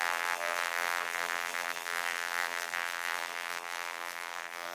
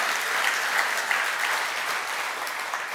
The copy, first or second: first